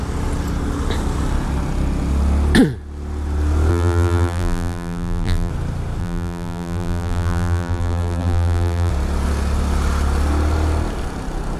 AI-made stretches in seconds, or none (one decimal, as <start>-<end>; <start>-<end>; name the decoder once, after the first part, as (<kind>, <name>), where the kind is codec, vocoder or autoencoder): 3.7-5.5 (vocoder, BigVGAN v2); 6.0-8.9

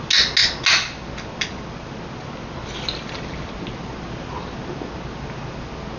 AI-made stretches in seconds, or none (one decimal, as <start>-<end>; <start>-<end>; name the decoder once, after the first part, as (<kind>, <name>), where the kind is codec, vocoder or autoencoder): none

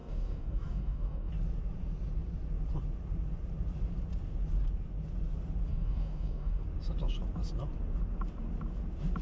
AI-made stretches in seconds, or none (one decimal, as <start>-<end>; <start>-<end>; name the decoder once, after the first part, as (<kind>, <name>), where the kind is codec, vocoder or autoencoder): 0.0-1.3 (codec, DAC); 5.7-6.6